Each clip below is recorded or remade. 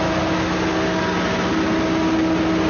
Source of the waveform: recorded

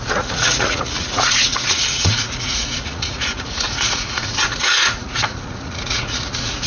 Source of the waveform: remade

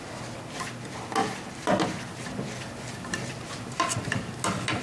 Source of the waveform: recorded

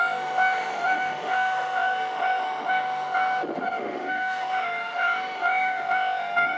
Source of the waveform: remade